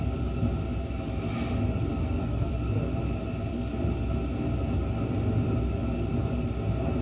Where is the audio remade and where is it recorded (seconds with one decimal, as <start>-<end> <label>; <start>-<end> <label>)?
0.0-1.9 recorded; 1.9-2.5 remade; 2.5-7.0 recorded

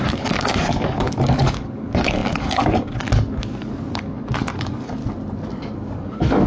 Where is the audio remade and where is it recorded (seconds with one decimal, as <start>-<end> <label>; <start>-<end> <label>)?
0.0-5.0 remade; 5.0-5.9 recorded; 5.9-6.5 remade

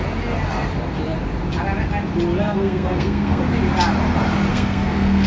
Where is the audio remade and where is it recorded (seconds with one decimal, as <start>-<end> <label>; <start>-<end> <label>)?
0.0-2.4 recorded; 2.4-3.4 remade; 3.4-4.5 recorded; 4.5-5.3 remade

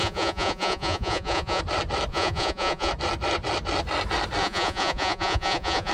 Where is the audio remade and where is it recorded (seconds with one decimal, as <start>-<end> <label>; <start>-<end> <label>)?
0.0-1.6 remade; 1.6-2.1 recorded; 2.1-2.9 remade; 2.9-4.4 recorded; 4.4-5.9 remade

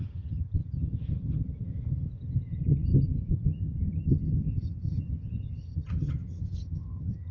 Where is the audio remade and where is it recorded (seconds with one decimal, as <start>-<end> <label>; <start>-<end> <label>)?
0.0-7.3 remade

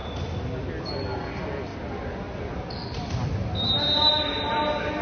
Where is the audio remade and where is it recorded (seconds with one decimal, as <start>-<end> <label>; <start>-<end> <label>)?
0.0-5.0 recorded